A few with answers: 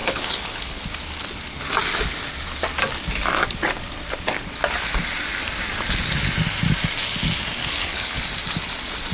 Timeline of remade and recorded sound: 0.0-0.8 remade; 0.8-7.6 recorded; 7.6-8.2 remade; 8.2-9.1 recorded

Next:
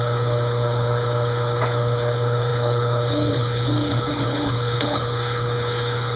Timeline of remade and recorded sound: 0.0-6.2 remade

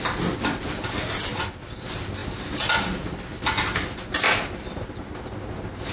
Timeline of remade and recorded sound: 0.0-5.9 recorded

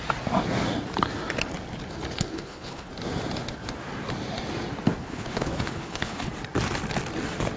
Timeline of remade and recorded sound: 0.0-2.3 recorded; 2.3-2.9 remade; 2.9-5.0 recorded; 5.0-6.3 remade; 6.3-7.6 recorded

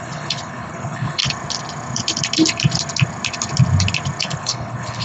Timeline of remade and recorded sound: 0.0-1.2 remade; 1.2-4.2 recorded; 4.2-5.0 remade

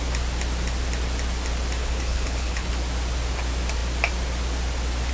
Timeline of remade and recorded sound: 0.0-1.8 recorded; 1.8-2.7 remade; 2.7-5.1 recorded

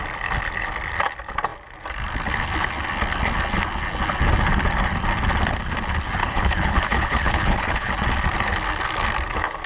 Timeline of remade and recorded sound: 0.0-6.2 recorded; 6.2-7.9 remade; 7.9-9.7 recorded

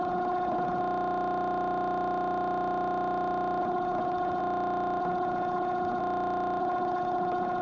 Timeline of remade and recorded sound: 0.0-0.8 remade; 0.8-3.6 recorded; 3.6-4.4 remade; 4.4-5.0 recorded; 5.0-6.0 remade; 6.0-6.6 recorded; 6.6-7.6 remade